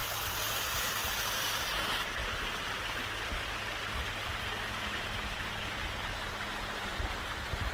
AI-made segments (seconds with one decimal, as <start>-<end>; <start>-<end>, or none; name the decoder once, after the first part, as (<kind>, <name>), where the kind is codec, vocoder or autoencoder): 0.0-1.1 (vocoder, BigVGAN v2); 6.5-7.0